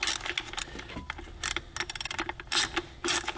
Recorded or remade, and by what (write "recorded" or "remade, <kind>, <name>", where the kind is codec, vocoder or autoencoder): recorded